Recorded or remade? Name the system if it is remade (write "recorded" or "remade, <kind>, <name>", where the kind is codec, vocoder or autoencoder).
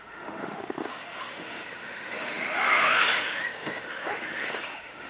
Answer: remade, autoencoder, DAC-VAE